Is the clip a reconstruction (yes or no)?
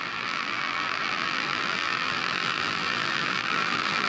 yes